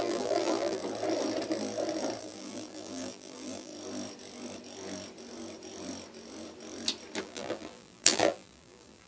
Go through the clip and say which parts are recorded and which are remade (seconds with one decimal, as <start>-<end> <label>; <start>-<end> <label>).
0.0-0.8 remade; 0.8-2.2 recorded; 2.2-3.7 remade; 3.7-7.2 recorded; 7.2-9.1 remade